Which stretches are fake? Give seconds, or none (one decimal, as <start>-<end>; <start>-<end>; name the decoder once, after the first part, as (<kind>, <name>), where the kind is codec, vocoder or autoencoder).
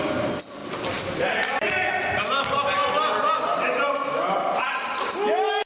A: none